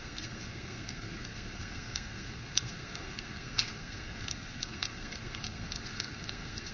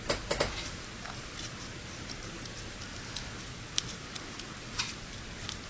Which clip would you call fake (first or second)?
first